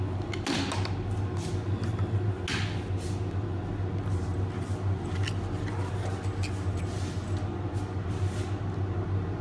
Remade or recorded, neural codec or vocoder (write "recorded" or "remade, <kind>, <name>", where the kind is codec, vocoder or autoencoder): recorded